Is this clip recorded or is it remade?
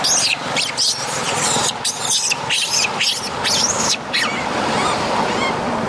recorded